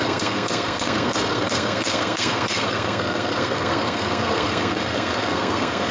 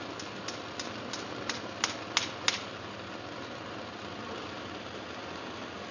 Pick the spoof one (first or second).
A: first